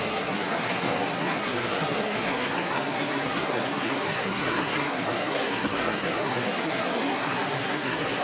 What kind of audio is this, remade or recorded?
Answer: remade